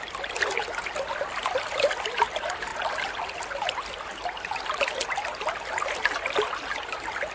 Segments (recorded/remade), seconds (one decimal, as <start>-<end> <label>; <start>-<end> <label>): 0.0-7.3 recorded